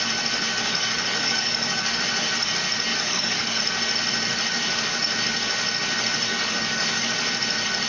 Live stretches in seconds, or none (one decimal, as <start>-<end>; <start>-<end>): 0.0-0.7; 2.0-2.9; 3.6-6.3; 7.1-7.9